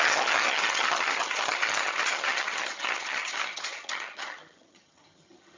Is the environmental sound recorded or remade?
remade